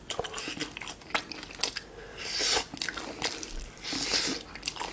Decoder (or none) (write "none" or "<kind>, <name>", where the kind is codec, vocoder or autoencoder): none